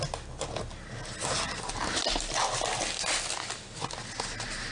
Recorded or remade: recorded